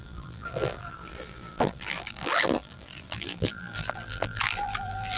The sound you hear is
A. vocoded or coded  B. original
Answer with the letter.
A